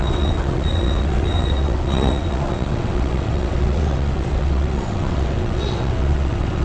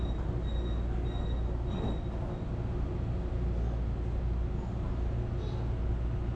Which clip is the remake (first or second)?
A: first